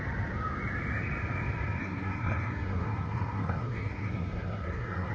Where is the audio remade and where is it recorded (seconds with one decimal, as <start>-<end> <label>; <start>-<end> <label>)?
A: 0.0-1.8 recorded; 1.8-5.1 remade